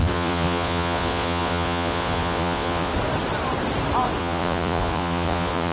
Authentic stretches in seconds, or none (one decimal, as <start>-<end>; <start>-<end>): 2.9-4.2